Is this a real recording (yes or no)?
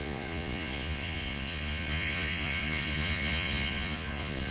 no